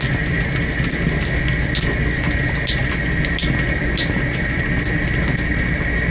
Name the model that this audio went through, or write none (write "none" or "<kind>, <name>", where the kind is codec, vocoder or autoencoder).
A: none